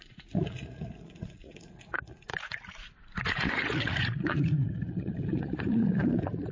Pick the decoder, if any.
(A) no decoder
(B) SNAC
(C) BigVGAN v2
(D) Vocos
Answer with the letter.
D